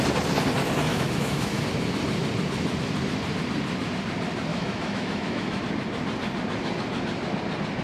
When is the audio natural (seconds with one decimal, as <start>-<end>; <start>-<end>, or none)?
0.0-0.9; 1.6-4.5; 5.6-7.8

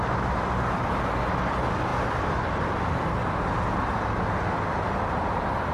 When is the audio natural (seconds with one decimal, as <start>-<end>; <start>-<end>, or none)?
0.0-5.7

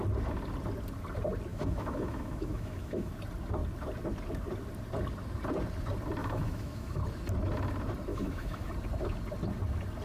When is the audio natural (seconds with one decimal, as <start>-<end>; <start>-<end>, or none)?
0.0-1.5; 3.1-6.2; 7.0-8.1; 8.7-10.0